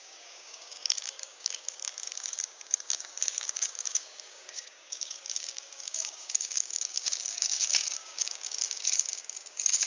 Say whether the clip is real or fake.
fake